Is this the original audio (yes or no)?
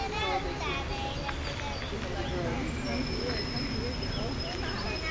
yes